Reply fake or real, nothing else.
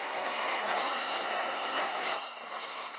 fake